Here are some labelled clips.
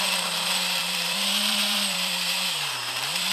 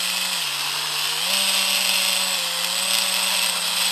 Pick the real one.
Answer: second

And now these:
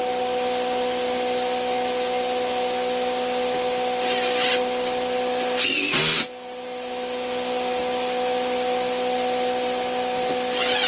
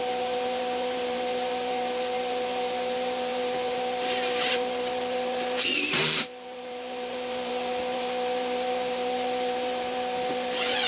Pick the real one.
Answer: first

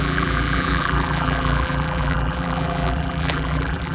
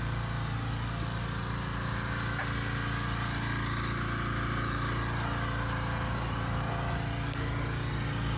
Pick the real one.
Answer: second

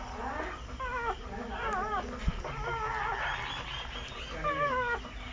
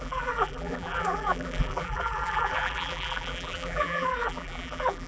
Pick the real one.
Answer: first